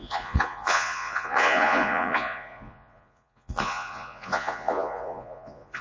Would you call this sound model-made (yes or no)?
yes